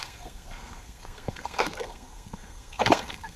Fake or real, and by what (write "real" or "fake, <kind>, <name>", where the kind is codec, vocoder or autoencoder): fake, codec, SNAC